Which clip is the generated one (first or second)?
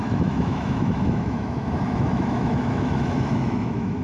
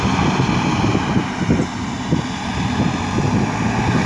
first